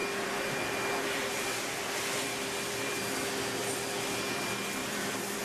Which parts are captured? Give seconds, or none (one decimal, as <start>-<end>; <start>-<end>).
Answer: 3.1-4.8

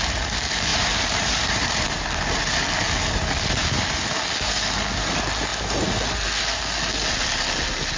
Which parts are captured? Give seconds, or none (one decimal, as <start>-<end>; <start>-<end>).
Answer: 0.0-0.7; 2.5-8.0